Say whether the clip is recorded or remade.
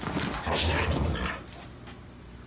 recorded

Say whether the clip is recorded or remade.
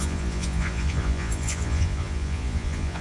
remade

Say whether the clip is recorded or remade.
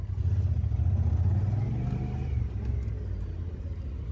recorded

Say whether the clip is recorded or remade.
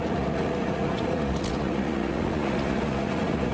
remade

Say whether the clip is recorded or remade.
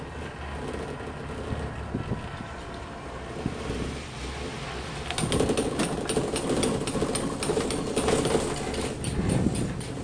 recorded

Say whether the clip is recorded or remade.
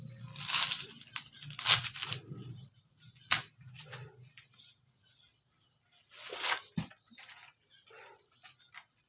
recorded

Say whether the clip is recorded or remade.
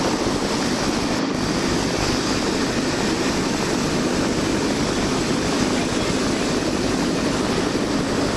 recorded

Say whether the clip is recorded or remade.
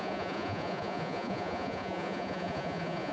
remade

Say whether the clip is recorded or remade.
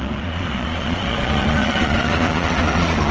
remade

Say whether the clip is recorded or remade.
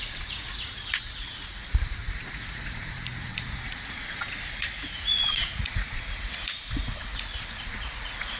remade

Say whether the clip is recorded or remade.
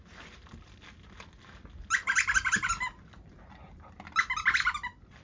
recorded